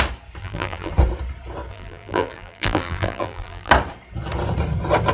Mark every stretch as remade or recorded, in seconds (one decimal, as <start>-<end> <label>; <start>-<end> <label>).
0.0-0.4 recorded; 0.4-0.9 remade; 0.9-1.7 recorded; 1.7-3.7 remade; 3.7-5.1 recorded